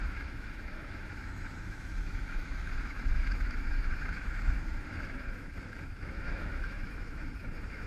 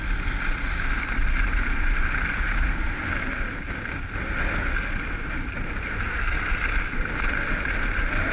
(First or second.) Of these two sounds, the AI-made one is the first